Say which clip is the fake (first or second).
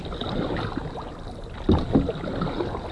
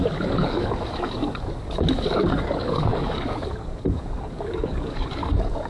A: second